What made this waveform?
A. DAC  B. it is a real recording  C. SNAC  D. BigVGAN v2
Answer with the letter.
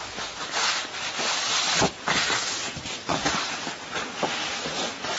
B